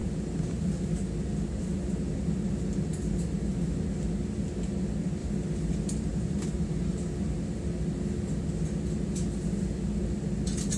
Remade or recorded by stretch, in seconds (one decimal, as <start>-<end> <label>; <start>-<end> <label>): 0.0-5.2 recorded; 5.2-6.4 remade; 6.4-10.8 recorded